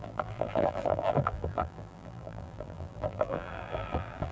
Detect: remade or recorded remade